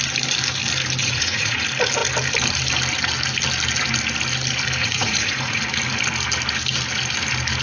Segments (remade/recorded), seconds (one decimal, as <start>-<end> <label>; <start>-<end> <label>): 0.0-1.0 recorded; 1.0-1.6 remade; 1.6-4.8 recorded; 4.8-5.6 remade; 5.6-7.6 recorded